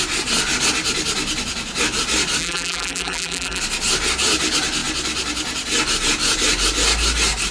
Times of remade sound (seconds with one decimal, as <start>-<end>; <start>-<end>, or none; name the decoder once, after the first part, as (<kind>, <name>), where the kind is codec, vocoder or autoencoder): 2.4-3.6 (vocoder, BigVGAN v2)